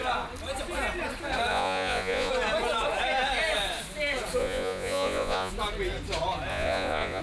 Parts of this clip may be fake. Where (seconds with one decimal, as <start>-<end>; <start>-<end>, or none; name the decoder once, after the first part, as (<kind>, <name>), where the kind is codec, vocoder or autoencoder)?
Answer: 1.5-2.3 (vocoder, Vocos); 4.4-5.5; 6.5-7.2